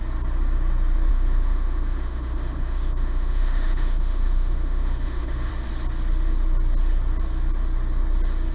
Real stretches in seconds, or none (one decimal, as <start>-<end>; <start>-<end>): 0.0-1.1; 5.5-8.5